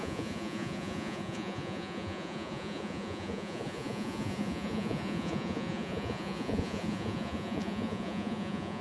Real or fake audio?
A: fake